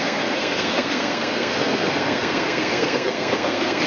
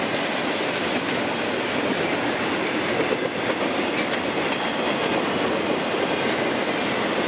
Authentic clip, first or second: second